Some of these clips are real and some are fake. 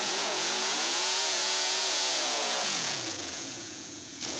fake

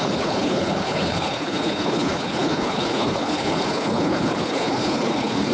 fake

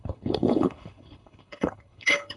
fake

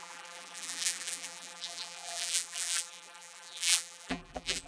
fake